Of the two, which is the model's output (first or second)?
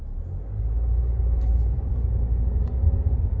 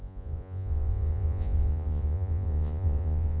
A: second